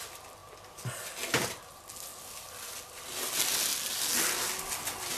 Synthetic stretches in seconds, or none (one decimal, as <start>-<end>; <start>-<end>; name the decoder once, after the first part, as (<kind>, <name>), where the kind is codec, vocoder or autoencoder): none